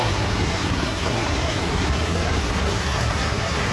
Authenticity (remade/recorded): remade